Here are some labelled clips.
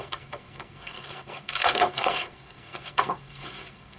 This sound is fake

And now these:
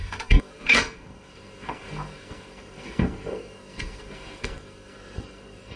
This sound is fake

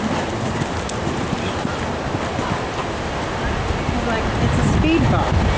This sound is real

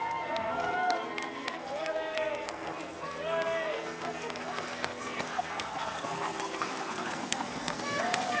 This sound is fake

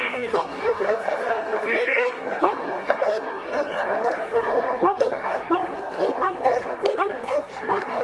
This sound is fake